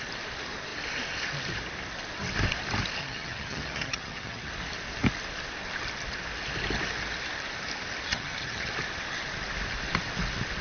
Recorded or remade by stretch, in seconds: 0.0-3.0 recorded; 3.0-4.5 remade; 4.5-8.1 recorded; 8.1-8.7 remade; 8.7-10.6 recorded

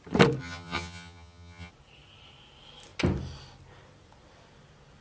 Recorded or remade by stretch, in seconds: 0.0-0.4 recorded; 0.4-1.7 remade; 1.7-5.0 recorded

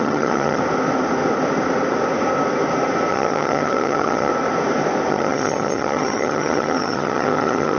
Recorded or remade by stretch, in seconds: 0.0-0.6 remade; 0.6-3.1 recorded; 3.1-4.3 remade; 4.3-5.1 recorded; 5.1-7.8 remade

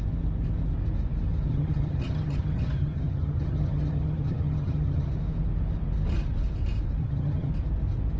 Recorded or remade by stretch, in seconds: 0.0-1.5 recorded; 1.5-5.1 remade; 5.1-7.0 recorded; 7.0-7.5 remade; 7.5-8.2 recorded